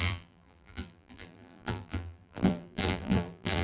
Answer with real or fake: fake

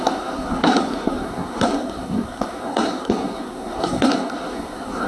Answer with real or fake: fake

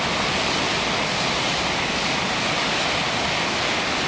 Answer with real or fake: real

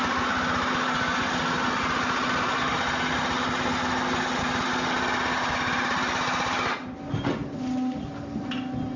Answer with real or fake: real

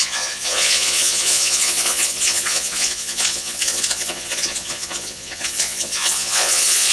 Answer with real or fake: fake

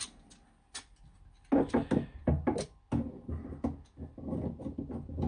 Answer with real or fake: real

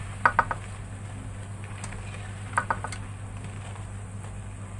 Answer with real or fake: real